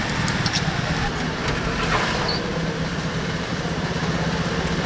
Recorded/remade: recorded